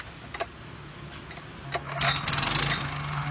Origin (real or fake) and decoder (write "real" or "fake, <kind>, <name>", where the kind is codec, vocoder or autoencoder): real